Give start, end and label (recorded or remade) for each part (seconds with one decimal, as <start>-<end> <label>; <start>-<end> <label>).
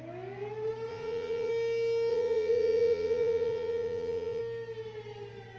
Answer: 0.0-0.9 recorded; 0.9-1.5 remade; 1.5-2.1 recorded; 2.1-4.4 remade; 4.4-5.6 recorded